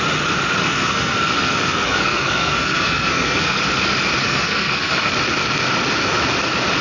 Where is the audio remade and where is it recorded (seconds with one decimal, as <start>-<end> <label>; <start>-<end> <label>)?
0.0-0.6 recorded; 0.6-3.6 remade; 3.6-4.2 recorded; 4.2-5.1 remade; 5.1-6.8 recorded